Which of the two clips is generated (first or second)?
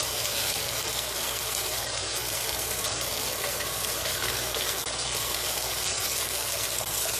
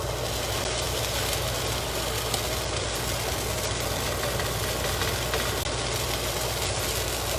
first